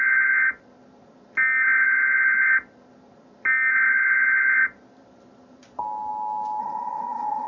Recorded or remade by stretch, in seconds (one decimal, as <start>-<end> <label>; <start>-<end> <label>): 0.0-6.6 recorded; 6.6-7.5 remade